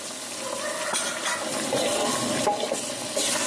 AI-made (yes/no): no